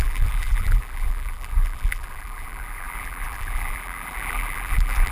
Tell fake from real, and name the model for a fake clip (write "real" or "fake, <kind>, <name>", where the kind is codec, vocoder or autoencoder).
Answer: fake, vocoder, BigVGAN v2